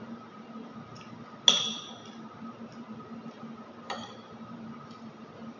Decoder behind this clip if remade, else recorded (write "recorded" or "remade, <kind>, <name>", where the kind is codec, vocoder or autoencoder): recorded